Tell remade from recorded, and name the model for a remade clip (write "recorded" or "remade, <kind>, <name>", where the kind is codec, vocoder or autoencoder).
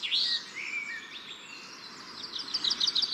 recorded